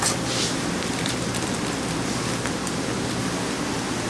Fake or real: real